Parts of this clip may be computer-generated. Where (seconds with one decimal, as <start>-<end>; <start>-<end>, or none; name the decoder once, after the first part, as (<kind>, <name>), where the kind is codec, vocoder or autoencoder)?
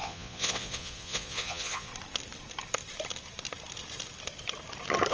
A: 0.0-1.9 (vocoder, Vocos)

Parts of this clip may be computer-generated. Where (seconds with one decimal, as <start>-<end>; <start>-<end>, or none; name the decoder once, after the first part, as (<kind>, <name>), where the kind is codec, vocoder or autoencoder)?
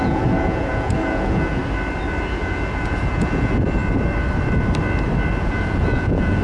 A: 0.0-1.6 (vocoder, Vocos); 2.3-3.8; 5.4-6.4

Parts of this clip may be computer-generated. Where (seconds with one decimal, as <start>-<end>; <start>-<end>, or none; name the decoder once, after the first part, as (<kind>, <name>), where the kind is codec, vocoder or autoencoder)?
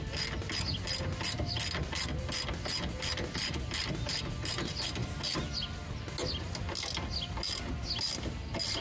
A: none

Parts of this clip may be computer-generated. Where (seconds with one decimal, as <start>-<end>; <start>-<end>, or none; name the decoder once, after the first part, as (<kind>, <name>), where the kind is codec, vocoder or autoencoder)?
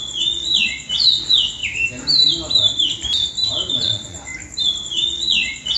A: 0.0-1.6 (vocoder, Vocos); 3.7-4.3; 4.8-5.8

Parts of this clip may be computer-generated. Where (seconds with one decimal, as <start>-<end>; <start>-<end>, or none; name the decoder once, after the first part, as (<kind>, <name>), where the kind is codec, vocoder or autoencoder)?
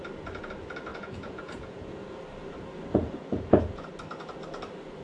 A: 0.9-2.2 (vocoder, Vocos); 2.9-3.9